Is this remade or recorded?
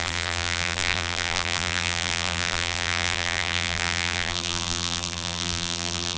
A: remade